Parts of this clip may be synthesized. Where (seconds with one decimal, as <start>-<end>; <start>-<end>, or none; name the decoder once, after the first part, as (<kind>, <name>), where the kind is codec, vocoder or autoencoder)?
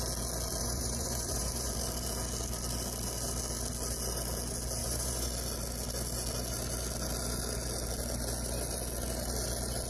0.6-1.7 (vocoder, Vocos); 4.8-5.3